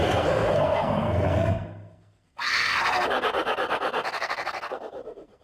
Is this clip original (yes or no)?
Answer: no